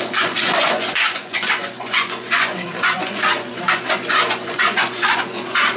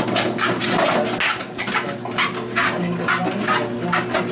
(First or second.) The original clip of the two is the second